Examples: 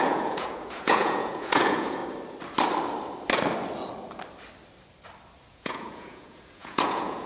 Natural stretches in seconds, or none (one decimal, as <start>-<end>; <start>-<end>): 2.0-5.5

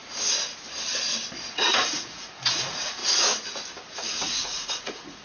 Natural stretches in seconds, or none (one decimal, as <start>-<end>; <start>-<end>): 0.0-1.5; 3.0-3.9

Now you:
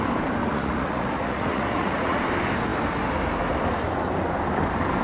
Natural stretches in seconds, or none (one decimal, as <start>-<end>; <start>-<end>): 0.0-0.4; 2.2-5.0

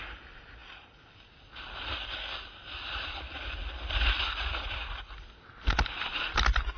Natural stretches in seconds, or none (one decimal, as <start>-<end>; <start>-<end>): 0.0-6.8

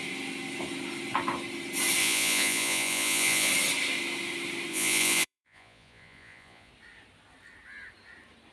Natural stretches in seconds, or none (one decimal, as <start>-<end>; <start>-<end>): 0.0-2.0; 3.5-4.7; 6.7-8.5

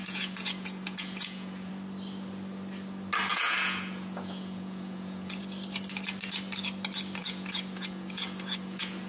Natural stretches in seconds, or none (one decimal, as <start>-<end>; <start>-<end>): 1.7-3.3; 5.4-7.2

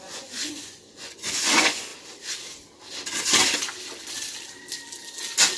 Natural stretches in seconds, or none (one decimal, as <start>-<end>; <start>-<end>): 1.9-5.6

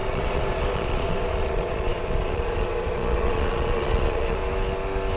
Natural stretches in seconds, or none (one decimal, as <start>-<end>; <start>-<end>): 4.4-5.2